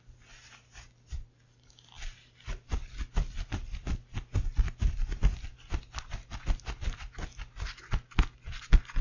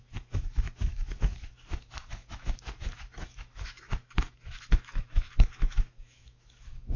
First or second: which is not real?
second